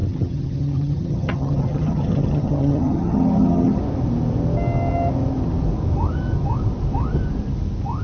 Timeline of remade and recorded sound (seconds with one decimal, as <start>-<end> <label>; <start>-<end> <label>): 0.0-3.8 remade; 3.8-8.0 recorded